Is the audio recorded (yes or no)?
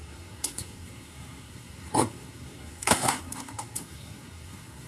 no